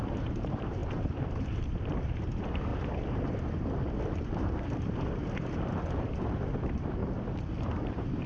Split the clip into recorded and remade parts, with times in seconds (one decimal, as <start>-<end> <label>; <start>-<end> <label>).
0.0-2.7 remade; 2.7-4.0 recorded; 4.0-7.0 remade; 7.0-7.6 recorded; 7.6-8.3 remade